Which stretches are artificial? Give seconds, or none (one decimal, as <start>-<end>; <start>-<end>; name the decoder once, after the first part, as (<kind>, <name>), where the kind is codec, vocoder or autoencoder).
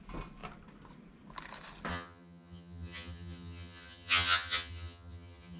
1.9-5.6 (vocoder, HiFi-GAN)